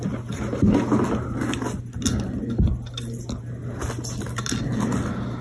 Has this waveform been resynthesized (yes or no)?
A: no